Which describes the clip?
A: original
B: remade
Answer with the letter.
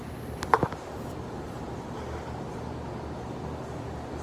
B